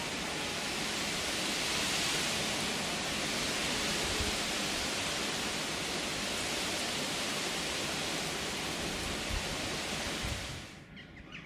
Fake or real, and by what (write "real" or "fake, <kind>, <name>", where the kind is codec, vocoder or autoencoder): real